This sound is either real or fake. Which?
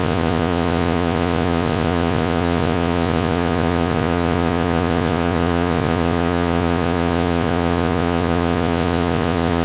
fake